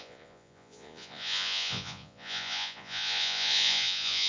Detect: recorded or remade remade